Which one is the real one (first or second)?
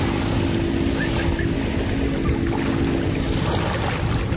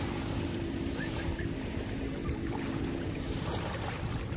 first